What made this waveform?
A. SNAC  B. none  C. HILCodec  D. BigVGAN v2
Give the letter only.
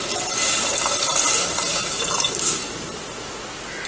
B